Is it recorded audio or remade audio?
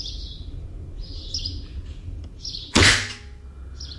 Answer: recorded